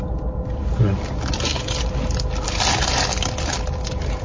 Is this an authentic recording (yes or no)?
yes